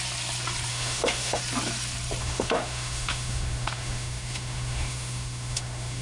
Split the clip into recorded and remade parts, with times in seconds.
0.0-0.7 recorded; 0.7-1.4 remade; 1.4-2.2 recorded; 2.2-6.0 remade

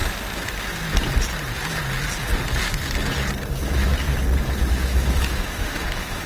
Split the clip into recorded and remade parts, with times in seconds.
0.0-3.5 recorded; 3.5-3.9 remade; 3.9-4.7 recorded; 4.7-6.3 remade

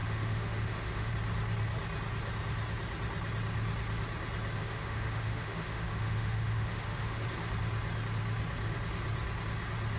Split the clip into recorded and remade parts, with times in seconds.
0.0-1.1 remade; 1.1-4.6 recorded; 4.6-7.2 remade; 7.2-10.0 recorded

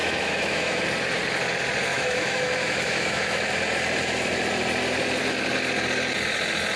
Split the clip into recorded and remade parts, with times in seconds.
0.0-0.8 remade; 0.8-1.9 recorded; 1.9-3.5 remade; 3.5-6.8 recorded

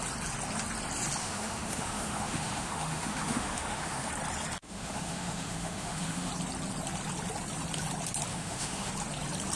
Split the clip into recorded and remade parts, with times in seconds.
0.0-1.2 recorded; 1.2-4.1 remade; 4.1-4.6 recorded; 4.6-6.3 remade; 6.3-8.3 recorded; 8.3-8.9 remade; 8.9-9.6 recorded